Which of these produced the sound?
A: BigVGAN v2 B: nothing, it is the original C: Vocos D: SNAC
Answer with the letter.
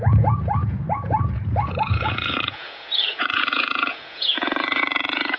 C